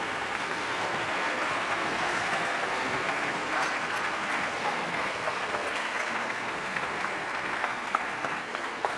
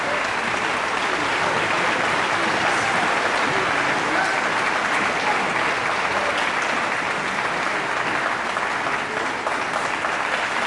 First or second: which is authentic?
second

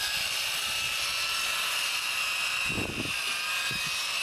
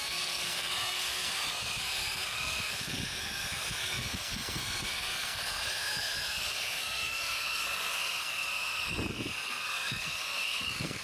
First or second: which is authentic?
first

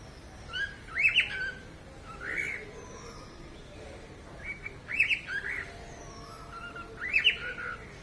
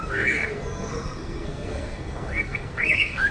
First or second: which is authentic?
first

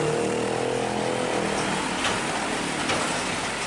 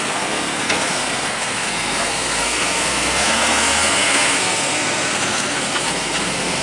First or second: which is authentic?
first